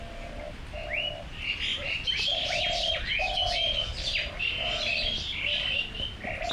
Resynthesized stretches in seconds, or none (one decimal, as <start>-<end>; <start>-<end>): 1.7-2.9; 4.9-5.7